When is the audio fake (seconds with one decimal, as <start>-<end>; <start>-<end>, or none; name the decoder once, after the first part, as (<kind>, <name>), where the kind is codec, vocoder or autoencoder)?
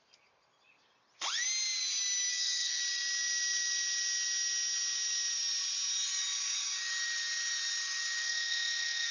2.3-2.8 (codec, SNAC); 8.2-9.1